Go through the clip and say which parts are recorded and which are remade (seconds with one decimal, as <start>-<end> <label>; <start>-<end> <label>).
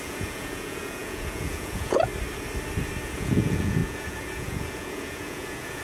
0.0-2.1 remade; 2.1-3.0 recorded; 3.0-5.8 remade